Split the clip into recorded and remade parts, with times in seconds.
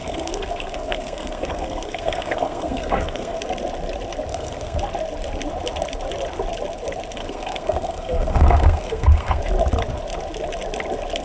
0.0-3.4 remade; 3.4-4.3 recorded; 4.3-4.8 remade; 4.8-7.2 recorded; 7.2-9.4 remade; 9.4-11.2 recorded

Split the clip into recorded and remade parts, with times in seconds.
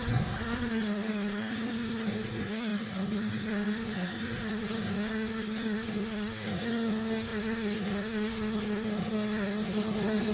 0.0-10.3 remade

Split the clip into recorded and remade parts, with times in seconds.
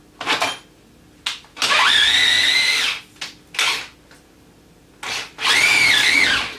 0.0-6.6 recorded